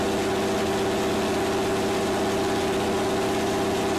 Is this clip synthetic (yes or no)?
no